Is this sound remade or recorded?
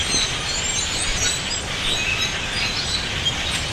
recorded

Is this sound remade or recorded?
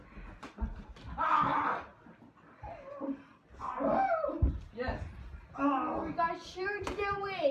recorded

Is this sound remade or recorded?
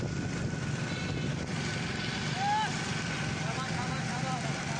recorded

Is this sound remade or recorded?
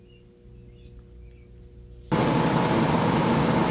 recorded